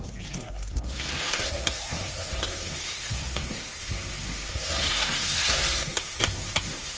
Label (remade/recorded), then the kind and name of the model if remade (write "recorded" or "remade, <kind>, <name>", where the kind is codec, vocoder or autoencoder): remade, codec, SNAC